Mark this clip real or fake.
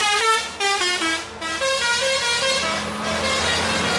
real